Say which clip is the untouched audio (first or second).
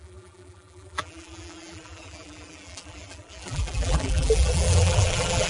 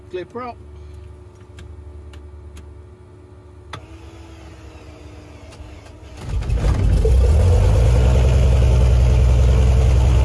second